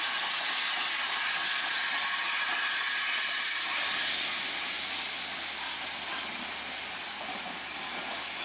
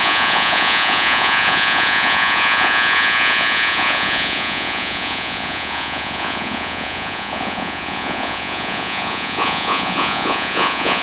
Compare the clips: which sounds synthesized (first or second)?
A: second